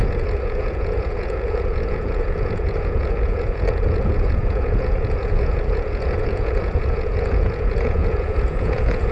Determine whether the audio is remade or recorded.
remade